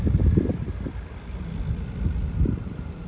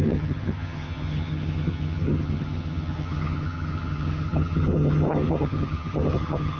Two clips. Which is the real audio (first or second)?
first